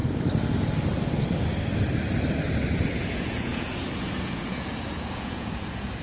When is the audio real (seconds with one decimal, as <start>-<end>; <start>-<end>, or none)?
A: 0.0-3.1